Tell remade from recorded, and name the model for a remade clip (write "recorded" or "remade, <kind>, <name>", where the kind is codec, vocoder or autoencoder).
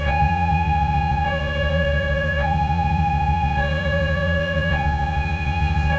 remade, vocoder, Vocos